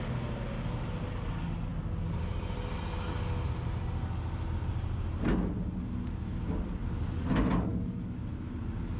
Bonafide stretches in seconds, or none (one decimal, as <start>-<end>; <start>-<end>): 0.0-7.7; 8.3-9.0